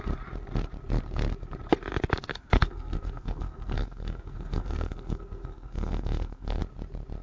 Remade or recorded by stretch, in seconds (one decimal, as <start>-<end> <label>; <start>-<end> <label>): 0.0-2.3 recorded; 2.3-6.6 remade; 6.6-7.2 recorded